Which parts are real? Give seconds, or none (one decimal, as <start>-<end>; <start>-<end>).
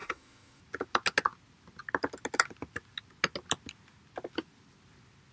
0.6-5.3